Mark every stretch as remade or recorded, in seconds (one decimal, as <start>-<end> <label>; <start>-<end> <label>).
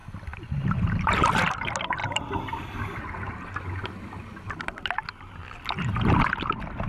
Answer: 0.0-6.9 recorded